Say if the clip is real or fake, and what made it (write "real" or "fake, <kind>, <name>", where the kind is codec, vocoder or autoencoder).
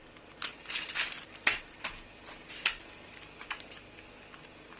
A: real